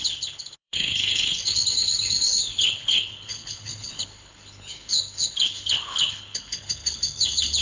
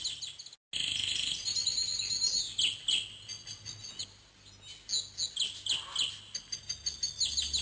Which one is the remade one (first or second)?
first